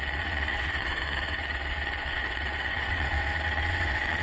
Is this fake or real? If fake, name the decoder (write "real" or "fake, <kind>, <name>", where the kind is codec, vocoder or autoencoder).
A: fake, vocoder, WaveNeXt